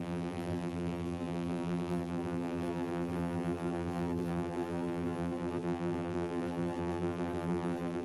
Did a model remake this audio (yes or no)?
yes